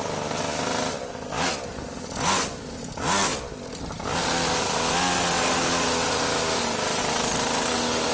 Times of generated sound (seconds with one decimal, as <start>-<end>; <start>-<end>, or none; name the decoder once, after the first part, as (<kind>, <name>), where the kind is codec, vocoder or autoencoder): none